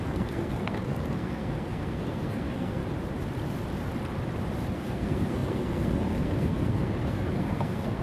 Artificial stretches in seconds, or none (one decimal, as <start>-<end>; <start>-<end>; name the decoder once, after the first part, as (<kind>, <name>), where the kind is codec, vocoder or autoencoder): 0.0-2.8 (codec, SNAC); 4.7-8.0